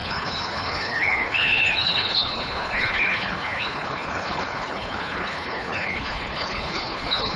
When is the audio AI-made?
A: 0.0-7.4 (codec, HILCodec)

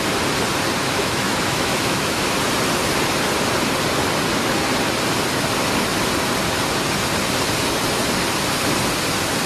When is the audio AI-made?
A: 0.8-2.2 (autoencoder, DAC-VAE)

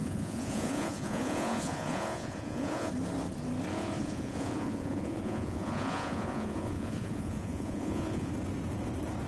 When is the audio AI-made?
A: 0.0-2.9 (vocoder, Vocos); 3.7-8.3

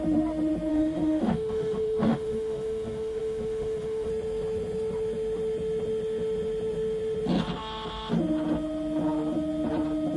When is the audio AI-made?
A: 0.7-4.1 (autoencoder, DAC-VAE)

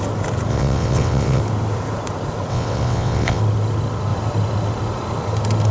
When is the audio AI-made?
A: 0.5-1.4 (vocoder, WaveNeXt); 2.5-3.4

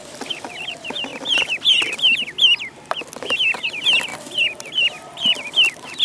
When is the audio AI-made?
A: 0.0-6.0 (vocoder, BigVGAN v2)

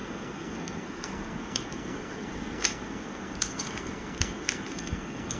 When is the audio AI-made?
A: 0.0-5.4 (codec, SNAC)